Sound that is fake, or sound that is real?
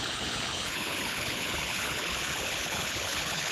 fake